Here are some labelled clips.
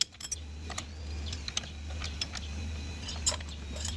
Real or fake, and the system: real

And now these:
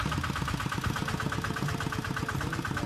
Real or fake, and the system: fake, vocoder, BigVGAN v2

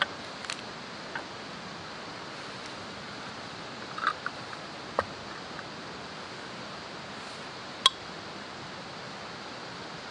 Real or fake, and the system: real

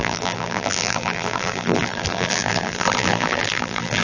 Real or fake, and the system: fake, vocoder, BigVGAN v2